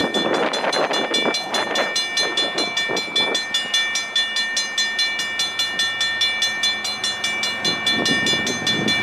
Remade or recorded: recorded